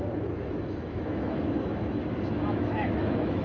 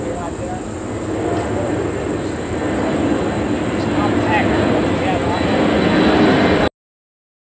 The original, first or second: second